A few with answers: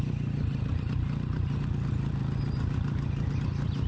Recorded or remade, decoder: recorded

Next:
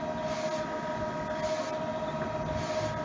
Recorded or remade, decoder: recorded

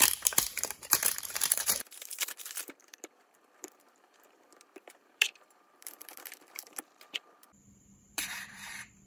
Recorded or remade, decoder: remade, vocoder, BigVGAN v2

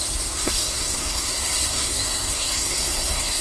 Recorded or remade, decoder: remade, codec, SNAC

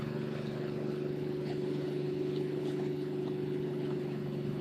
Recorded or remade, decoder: remade, codec, HILCodec